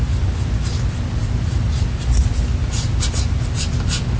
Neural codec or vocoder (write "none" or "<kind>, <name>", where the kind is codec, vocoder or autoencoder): none